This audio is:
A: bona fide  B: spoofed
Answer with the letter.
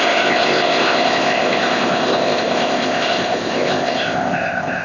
B